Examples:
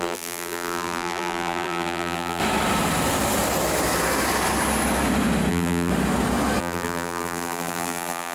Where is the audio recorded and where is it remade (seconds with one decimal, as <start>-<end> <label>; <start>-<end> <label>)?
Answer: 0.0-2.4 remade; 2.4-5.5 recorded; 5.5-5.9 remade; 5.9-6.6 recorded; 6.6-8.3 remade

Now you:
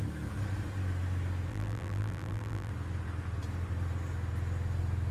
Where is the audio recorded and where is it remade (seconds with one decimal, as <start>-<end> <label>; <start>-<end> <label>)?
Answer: 0.0-1.5 recorded; 1.5-2.7 remade; 2.7-5.1 recorded

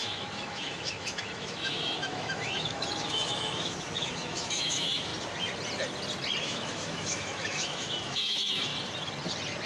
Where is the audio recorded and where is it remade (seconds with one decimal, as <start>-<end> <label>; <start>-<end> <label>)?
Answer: 0.0-5.1 remade; 5.1-6.4 recorded; 6.4-8.7 remade; 8.7-9.7 recorded